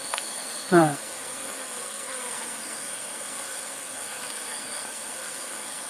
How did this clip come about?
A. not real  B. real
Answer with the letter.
A